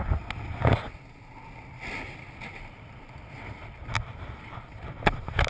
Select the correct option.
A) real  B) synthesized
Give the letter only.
A